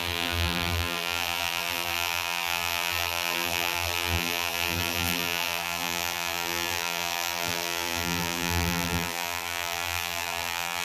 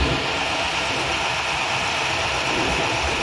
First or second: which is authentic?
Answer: second